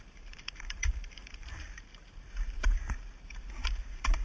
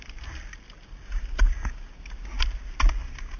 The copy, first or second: first